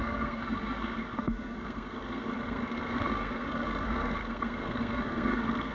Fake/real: fake